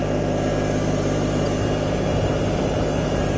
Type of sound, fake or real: real